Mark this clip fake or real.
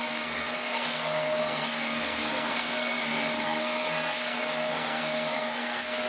fake